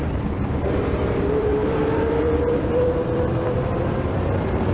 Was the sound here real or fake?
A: fake